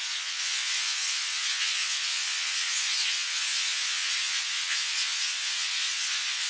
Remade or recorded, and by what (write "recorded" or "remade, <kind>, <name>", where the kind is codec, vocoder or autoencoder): remade, vocoder, Vocos